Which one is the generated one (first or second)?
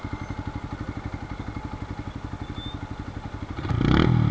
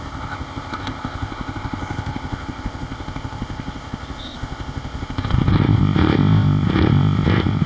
second